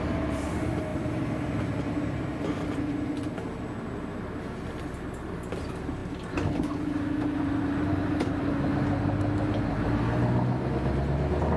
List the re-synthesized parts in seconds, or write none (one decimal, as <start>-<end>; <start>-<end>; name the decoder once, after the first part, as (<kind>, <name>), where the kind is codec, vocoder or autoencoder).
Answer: none

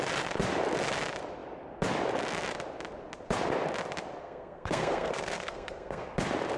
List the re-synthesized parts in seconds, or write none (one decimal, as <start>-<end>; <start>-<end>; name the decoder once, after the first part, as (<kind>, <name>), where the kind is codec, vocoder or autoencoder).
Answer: 4.2-6.1 (codec, SNAC)

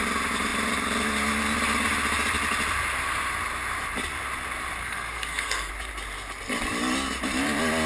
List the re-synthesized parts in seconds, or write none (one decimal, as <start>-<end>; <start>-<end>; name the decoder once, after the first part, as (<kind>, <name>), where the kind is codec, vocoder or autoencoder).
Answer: 4.8-5.7 (codec, SNAC)